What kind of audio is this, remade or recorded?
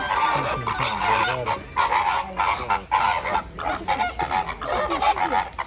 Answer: recorded